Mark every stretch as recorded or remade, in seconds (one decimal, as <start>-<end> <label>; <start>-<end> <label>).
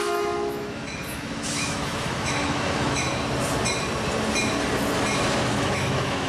0.0-3.1 remade; 3.1-5.5 recorded; 5.5-6.3 remade